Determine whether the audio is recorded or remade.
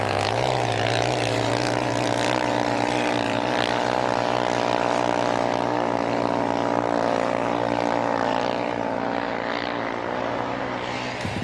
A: recorded